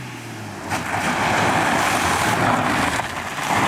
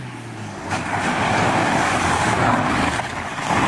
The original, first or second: first